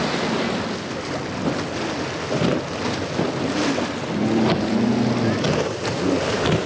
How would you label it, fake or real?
real